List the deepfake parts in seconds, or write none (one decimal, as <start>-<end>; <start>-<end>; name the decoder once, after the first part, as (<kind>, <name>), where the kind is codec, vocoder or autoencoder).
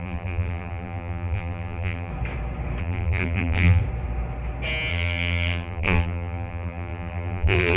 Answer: 0.0-2.1 (vocoder, BigVGAN v2); 2.8-3.8; 4.9-7.8